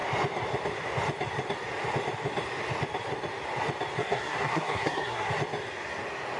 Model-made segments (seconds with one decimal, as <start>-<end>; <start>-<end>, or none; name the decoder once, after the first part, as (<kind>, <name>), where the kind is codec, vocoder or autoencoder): 4.0-5.3 (codec, SNAC)